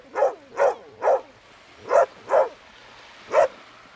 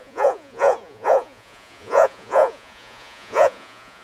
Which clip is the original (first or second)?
first